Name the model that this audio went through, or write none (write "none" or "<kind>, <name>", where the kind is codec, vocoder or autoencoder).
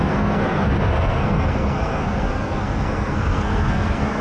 codec, SNAC